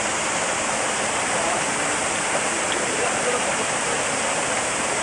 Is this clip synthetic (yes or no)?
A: yes